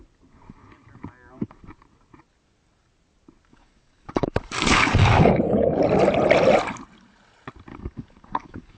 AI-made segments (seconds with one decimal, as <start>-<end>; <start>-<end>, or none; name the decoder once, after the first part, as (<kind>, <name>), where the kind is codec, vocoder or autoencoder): 3.5-5.8 (codec, DAC); 7.7-8.8